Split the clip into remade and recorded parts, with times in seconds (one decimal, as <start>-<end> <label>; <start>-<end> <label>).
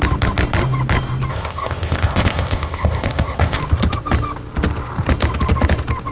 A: 0.0-1.3 recorded; 1.3-3.6 remade; 3.6-6.1 recorded